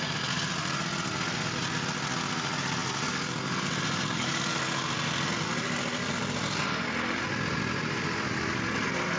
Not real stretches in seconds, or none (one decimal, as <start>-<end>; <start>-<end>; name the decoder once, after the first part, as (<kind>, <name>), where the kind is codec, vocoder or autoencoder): none